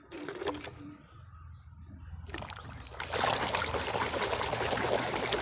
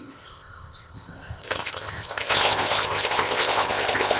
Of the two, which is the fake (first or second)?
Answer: second